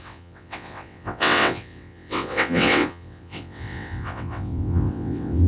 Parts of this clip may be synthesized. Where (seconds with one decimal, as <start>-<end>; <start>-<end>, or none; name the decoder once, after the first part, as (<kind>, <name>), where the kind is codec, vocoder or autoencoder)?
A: 0.0-5.5 (vocoder, WaveNeXt)